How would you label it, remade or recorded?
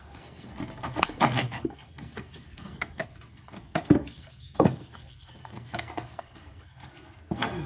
remade